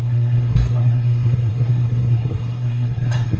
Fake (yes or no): yes